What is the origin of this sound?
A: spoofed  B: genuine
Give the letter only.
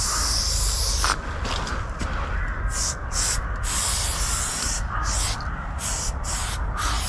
B